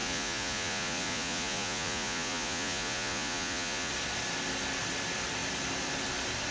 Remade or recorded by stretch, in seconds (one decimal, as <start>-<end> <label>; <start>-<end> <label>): 0.0-3.9 remade; 3.9-6.5 recorded